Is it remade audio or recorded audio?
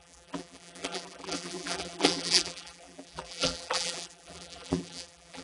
remade